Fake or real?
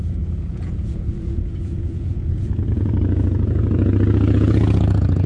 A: fake